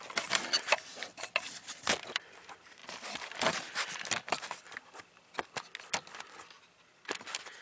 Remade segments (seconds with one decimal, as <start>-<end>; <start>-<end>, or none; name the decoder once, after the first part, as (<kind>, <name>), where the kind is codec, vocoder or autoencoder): none